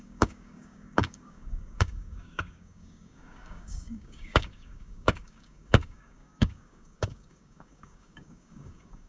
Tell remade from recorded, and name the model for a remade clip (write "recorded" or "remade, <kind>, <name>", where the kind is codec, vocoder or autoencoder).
remade, codec, DAC